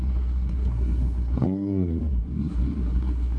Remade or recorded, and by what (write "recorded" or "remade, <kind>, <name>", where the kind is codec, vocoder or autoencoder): remade, codec, SNAC